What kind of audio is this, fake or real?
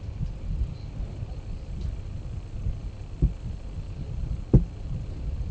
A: real